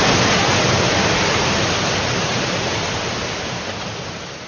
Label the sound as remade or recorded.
recorded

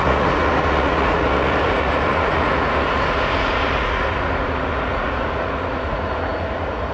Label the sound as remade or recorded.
remade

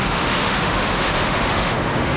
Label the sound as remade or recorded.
remade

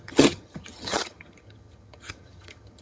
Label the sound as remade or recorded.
remade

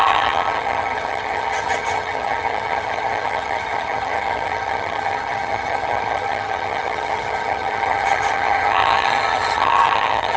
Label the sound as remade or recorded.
remade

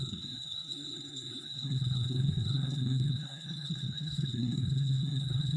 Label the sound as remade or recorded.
remade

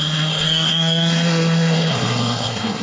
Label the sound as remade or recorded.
remade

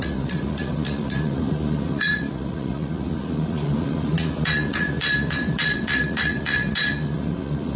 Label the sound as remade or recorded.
remade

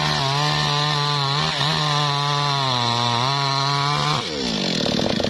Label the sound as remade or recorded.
recorded